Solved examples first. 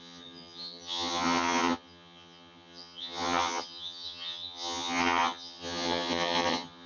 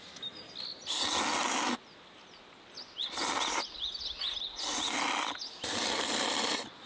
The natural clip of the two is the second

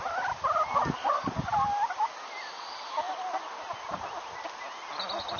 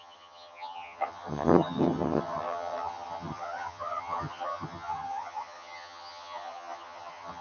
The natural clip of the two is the first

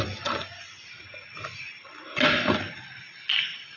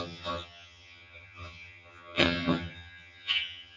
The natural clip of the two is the first